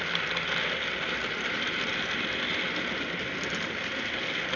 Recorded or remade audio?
recorded